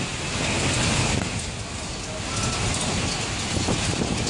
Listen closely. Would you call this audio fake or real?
real